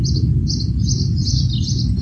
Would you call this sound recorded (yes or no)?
yes